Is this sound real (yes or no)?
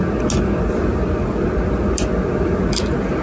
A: yes